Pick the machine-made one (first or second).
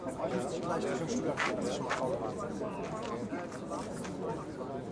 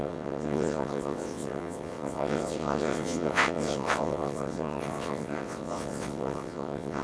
second